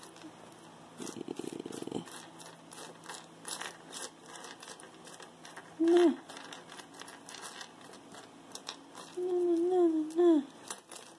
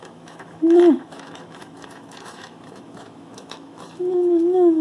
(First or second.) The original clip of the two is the first